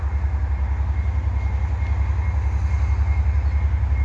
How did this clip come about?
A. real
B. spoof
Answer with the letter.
A